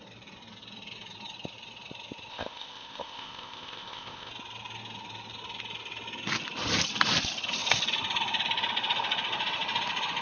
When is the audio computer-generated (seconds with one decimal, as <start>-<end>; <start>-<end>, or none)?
2.3-4.3